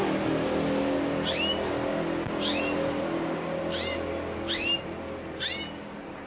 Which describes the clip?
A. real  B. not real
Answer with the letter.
A